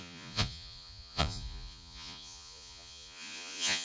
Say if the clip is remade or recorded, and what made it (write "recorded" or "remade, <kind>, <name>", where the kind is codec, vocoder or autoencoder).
remade, vocoder, Vocos